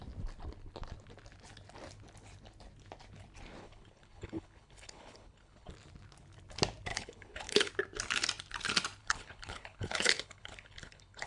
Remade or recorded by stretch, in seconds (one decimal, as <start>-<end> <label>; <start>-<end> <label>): 0.0-3.6 recorded; 3.6-5.7 remade; 5.7-6.9 recorded; 6.9-7.7 remade; 7.7-9.0 recorded; 9.0-11.3 remade